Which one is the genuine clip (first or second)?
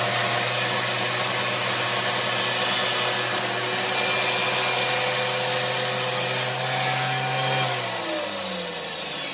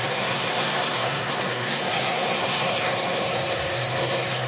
first